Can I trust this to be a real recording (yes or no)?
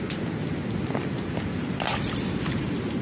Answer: yes